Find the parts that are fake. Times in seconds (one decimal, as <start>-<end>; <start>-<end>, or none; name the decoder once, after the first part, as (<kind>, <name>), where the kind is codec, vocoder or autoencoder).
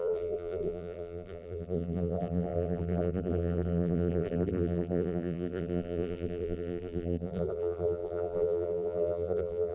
0.0-9.7 (vocoder, BigVGAN v2)